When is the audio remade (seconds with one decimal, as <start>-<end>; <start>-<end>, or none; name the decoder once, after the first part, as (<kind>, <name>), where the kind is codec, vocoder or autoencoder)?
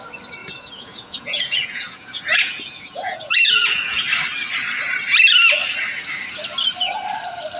0.4-4.0 (vocoder, Vocos)